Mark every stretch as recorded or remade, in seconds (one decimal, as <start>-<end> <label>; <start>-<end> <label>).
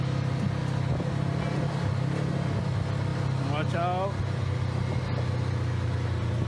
0.0-6.5 recorded